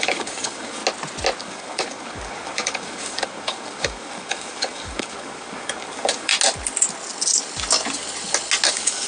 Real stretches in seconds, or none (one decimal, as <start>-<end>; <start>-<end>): 0.8-1.4; 6.3-8.7